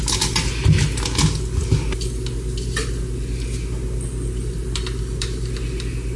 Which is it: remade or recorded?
recorded